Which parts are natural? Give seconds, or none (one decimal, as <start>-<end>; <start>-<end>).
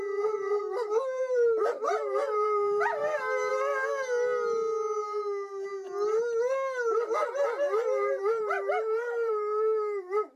3.5-7.3